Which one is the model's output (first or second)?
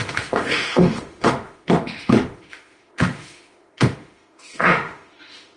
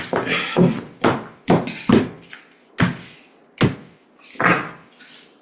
first